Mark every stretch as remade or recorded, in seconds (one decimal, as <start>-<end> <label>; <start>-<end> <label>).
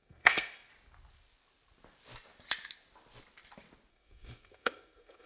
0.0-0.7 remade; 0.7-3.9 recorded; 3.9-5.3 remade